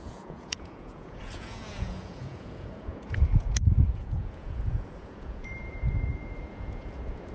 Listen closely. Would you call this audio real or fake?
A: fake